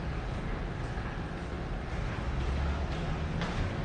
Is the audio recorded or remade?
recorded